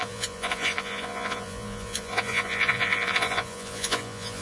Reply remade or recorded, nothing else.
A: remade